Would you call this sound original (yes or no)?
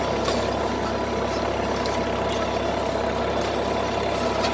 yes